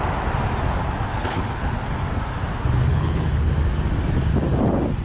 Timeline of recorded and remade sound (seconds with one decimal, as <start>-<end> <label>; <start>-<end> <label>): 0.0-1.1 recorded; 1.1-1.8 remade; 1.8-2.9 recorded; 2.9-3.5 remade; 3.5-5.0 recorded